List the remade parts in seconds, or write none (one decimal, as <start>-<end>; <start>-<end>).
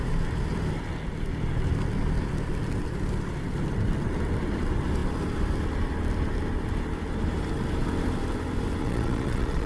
8.8-9.7